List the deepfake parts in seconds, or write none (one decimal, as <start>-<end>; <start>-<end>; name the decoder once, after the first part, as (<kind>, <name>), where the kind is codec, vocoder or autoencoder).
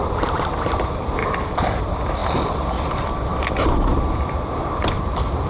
0.0-1.2 (vocoder, BigVGAN v2); 1.8-2.2; 2.9-5.5